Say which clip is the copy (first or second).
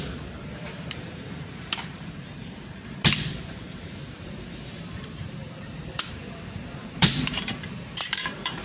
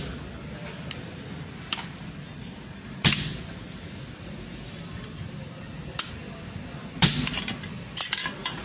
first